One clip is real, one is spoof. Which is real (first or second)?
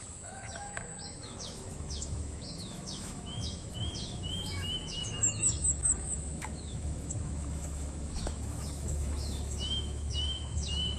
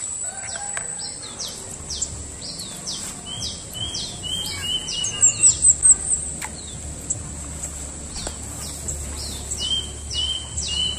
second